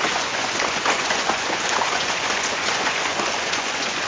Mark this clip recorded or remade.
remade